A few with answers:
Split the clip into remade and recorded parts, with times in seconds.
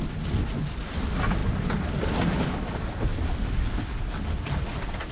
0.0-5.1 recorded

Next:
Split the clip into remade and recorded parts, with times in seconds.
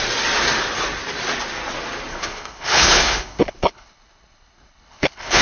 0.0-2.1 recorded; 2.1-5.4 remade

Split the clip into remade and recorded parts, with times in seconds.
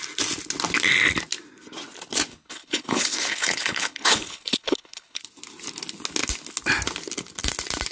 0.0-2.3 recorded; 2.3-5.2 remade; 5.2-7.9 recorded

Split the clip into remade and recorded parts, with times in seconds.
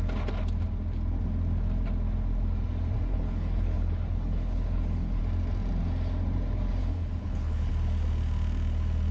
0.0-3.1 recorded; 3.1-5.2 remade; 5.2-6.8 recorded; 6.8-7.7 remade; 7.7-9.1 recorded